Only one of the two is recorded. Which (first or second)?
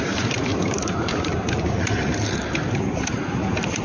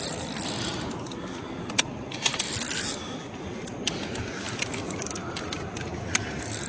second